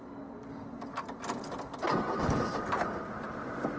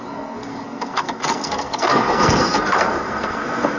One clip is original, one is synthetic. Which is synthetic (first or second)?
second